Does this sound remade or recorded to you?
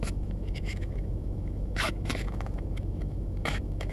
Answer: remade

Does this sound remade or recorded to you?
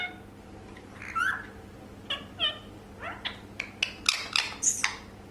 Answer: recorded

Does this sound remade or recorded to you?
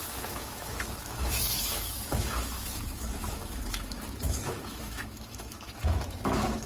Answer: remade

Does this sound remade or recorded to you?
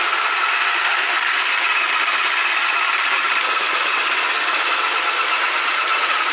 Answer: recorded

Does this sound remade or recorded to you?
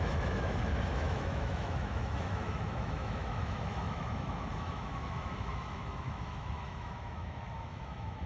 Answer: remade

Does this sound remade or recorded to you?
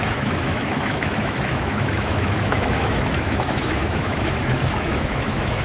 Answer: remade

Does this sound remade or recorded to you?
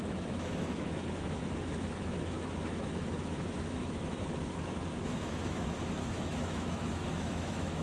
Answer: remade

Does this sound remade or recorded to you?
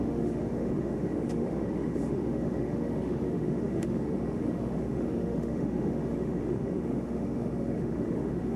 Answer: remade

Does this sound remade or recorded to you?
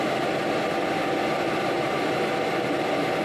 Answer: recorded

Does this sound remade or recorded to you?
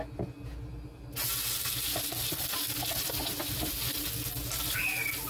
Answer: recorded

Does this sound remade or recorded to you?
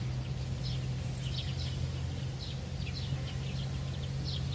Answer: recorded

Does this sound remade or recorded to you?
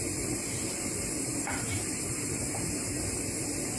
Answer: recorded